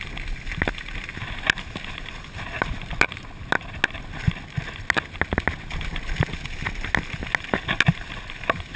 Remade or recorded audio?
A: recorded